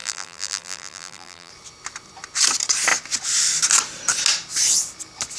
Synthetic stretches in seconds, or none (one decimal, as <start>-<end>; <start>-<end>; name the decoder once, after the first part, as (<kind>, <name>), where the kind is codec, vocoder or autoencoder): 0.0-1.5 (vocoder, BigVGAN v2)